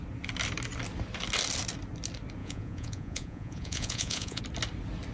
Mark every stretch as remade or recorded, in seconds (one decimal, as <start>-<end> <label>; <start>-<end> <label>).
0.0-2.4 recorded; 2.4-4.4 remade; 4.4-5.1 recorded